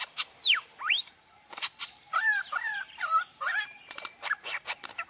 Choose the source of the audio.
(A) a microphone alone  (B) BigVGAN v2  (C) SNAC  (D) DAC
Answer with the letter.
B